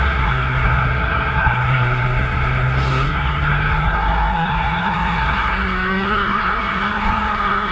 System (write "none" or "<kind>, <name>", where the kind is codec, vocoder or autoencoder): codec, SNAC